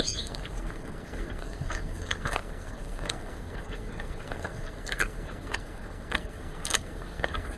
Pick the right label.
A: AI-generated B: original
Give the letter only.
A